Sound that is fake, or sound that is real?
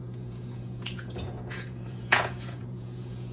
fake